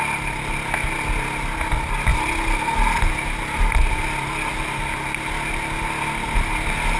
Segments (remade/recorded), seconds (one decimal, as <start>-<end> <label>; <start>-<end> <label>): 0.0-7.0 recorded